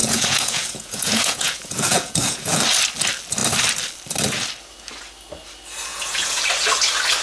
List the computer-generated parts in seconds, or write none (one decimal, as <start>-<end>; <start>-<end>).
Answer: 0.0-2.6; 5.9-6.4